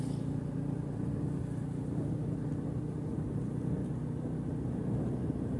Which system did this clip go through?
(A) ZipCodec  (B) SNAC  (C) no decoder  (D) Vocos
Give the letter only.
C